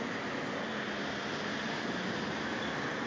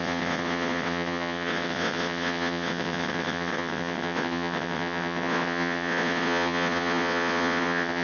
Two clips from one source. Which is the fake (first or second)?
second